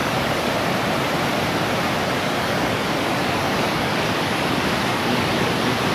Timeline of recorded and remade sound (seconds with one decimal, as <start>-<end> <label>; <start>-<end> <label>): 0.0-0.5 remade; 0.5-2.0 recorded; 2.0-5.5 remade; 5.5-5.9 recorded